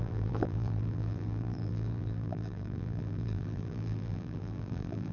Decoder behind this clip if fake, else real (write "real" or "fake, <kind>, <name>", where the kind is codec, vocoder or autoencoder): fake, vocoder, BigVGAN v2